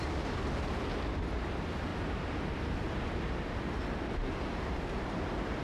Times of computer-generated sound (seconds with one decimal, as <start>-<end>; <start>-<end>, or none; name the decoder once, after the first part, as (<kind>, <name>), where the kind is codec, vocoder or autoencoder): 1.9-5.6 (vocoder, BigVGAN v2)